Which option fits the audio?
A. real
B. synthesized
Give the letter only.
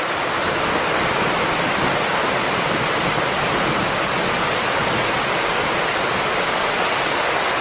A